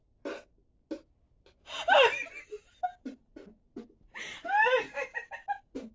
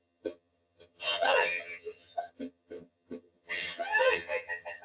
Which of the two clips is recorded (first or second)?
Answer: first